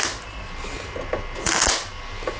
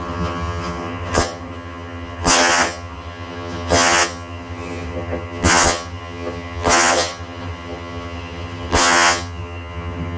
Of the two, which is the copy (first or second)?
second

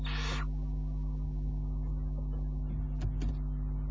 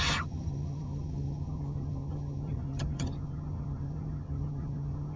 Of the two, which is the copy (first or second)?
second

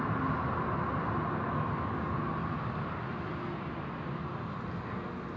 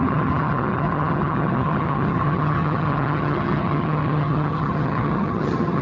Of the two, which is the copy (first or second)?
second